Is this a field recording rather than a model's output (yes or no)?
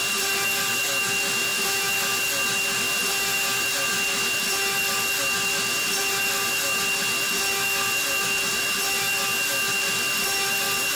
yes